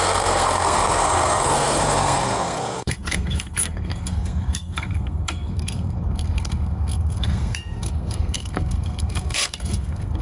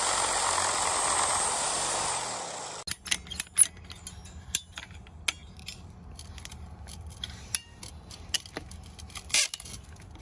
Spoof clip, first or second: first